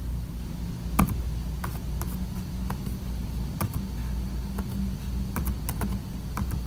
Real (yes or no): yes